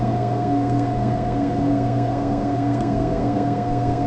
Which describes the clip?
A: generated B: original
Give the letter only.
A